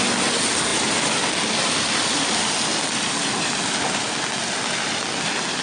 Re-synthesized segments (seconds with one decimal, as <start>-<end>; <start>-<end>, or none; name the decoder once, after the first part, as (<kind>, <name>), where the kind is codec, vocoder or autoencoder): none